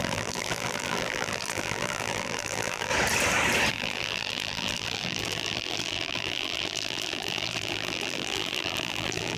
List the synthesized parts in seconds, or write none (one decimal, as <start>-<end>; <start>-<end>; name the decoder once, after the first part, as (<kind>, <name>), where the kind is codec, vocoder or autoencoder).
0.0-2.9 (vocoder, BigVGAN v2); 3.7-9.4